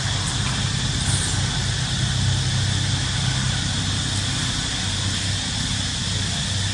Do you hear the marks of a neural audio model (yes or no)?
yes